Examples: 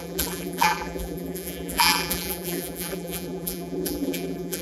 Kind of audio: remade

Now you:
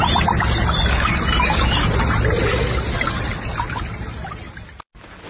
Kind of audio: recorded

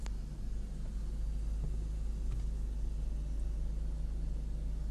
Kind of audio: recorded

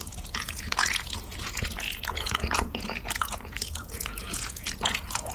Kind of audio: remade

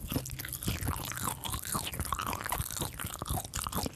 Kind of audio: recorded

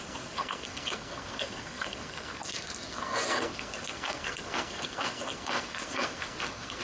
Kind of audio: remade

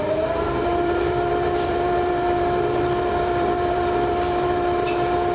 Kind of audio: remade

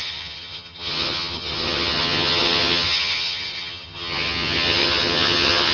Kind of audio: remade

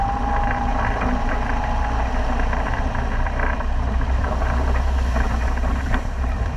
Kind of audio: remade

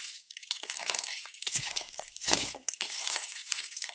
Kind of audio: remade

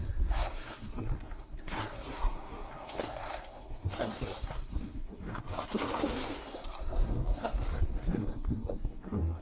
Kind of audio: remade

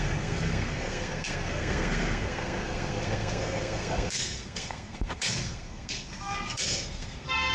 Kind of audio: remade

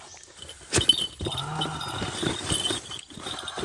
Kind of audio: recorded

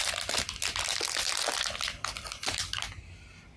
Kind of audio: recorded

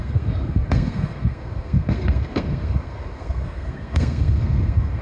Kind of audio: remade